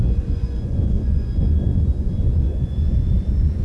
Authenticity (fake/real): fake